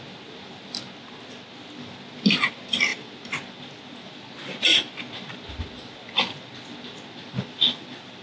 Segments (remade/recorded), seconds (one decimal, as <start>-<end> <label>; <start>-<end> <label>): 0.0-8.2 recorded